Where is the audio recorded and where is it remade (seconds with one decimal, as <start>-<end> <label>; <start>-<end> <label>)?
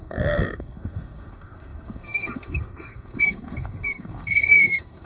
0.0-5.1 remade